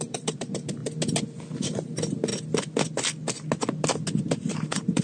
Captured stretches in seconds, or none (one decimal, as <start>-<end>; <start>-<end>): 0.8-1.6; 2.3-4.2